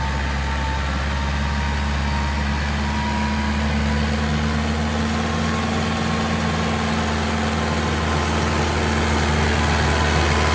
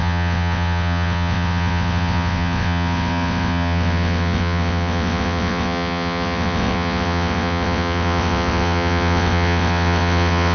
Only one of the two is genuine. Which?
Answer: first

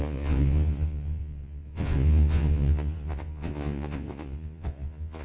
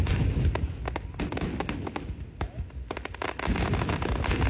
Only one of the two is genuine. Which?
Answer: second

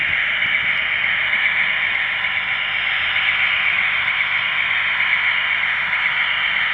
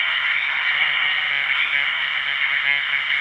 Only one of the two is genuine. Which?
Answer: first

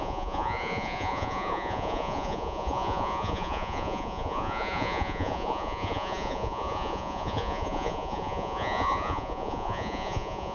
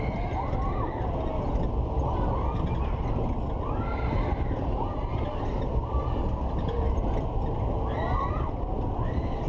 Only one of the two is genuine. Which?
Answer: second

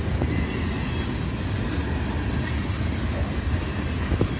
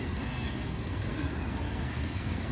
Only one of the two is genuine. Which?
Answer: first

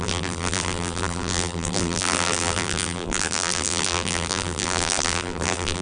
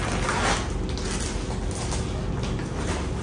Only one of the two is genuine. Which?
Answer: second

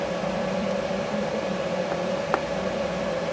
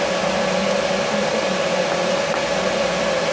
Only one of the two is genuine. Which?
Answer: second